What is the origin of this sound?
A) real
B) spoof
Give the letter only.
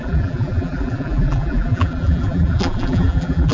B